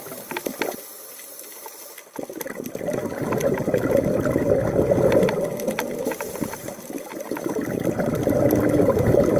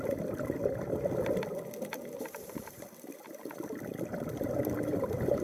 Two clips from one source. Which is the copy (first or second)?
second